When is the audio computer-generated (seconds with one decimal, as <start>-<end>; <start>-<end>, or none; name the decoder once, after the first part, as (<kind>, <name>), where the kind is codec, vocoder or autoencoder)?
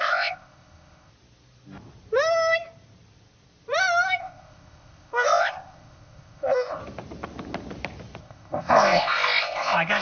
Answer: 0.0-1.1 (codec, ZipCodec); 4.2-6.8; 8.2-10.0